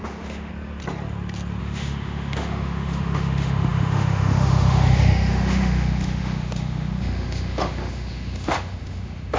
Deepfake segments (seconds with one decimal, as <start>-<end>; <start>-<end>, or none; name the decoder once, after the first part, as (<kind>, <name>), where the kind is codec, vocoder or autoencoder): 0.0-0.5 (autoencoder, DAC-VAE); 1.6-9.4